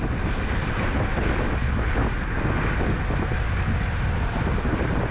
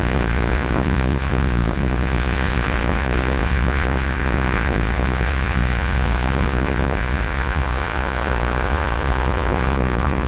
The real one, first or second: first